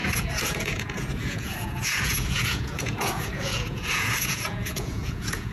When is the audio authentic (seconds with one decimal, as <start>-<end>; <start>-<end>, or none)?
none